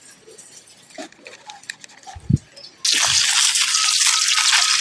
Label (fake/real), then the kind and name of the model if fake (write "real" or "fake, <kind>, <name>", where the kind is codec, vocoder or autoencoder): real